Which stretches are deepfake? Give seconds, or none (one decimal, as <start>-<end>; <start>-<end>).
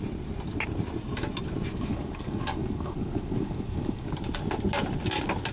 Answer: 1.7-4.1